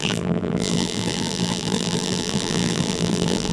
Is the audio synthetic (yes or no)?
yes